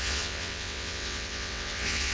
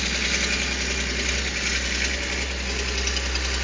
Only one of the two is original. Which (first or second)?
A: second